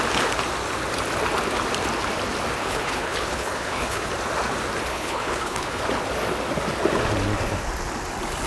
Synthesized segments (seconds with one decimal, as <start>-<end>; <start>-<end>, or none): 2.6-4.1; 4.9-5.8